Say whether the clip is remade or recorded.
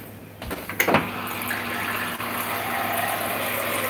recorded